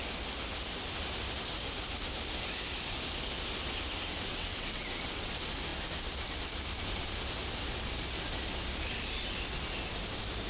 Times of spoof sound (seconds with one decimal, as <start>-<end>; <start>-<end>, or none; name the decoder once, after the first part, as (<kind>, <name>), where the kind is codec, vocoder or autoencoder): 4.3-5.3 (vocoder, WaveNeXt)